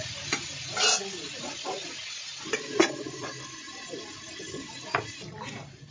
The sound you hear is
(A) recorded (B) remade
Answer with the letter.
A